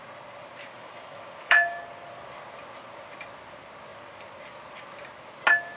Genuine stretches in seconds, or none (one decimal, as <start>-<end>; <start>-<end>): 0.0-0.7; 1.8-5.8